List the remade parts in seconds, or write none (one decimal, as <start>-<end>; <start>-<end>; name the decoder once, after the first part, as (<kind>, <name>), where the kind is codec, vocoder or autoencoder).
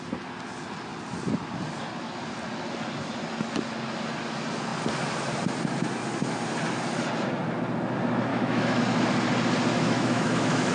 8.3-8.8 (autoencoder, DAC-VAE); 9.7-10.7